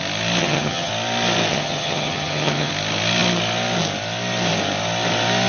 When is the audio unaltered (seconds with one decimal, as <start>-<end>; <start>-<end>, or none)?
0.0-0.4; 0.9-1.5; 2.7-5.5